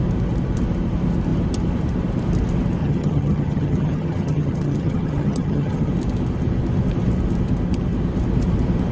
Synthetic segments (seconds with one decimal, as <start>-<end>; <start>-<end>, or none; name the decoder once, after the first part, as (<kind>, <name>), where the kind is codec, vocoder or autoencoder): 2.8-5.9 (vocoder, HiFi-GAN)